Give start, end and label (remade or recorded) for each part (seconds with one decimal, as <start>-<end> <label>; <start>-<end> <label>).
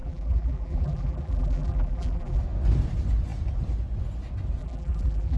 0.0-2.4 remade; 2.4-4.6 recorded; 4.6-5.4 remade